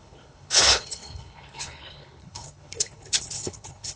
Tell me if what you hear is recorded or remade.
remade